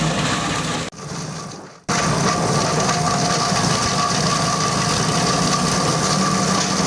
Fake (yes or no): no